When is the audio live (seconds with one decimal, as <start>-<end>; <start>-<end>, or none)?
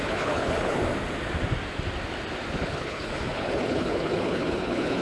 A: 0.8-2.6